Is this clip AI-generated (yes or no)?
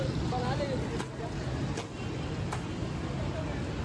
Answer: no